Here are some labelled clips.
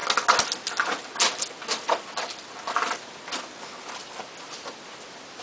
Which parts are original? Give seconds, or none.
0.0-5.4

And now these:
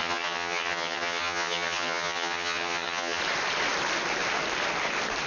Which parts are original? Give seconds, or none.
3.2-5.3

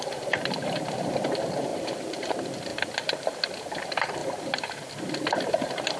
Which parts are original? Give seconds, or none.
2.7-3.8; 4.2-5.3

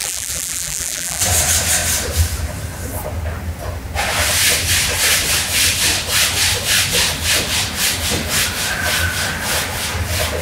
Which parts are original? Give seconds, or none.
1.2-10.4

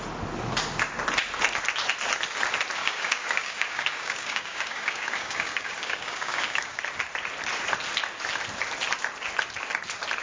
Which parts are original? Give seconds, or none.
0.0-2.8; 6.8-10.2

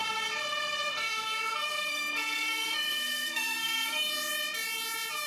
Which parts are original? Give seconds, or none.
0.0-0.9; 4.1-5.3